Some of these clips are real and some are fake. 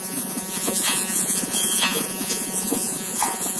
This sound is fake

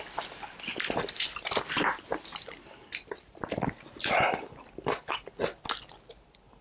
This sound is real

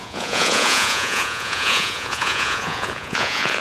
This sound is fake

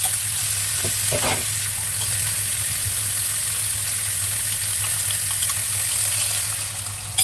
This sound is real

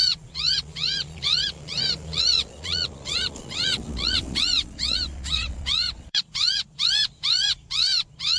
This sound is fake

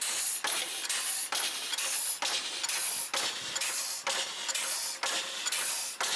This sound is real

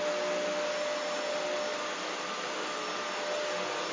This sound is real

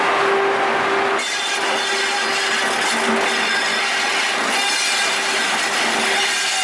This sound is real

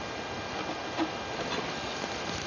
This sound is real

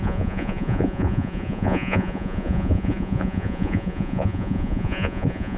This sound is fake